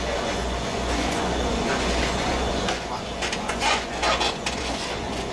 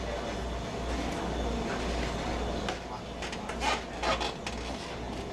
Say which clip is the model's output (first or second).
first